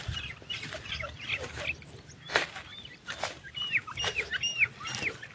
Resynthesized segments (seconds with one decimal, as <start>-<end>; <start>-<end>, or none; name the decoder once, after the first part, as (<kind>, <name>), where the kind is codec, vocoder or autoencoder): 3.2-4.3 (vocoder, BigVGAN v2)